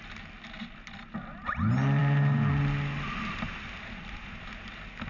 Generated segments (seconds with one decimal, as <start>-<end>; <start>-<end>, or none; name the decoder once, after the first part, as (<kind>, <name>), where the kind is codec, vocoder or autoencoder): none